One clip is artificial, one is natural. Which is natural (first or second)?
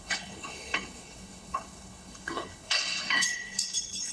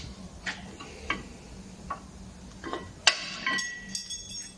second